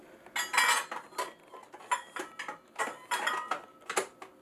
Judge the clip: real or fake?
real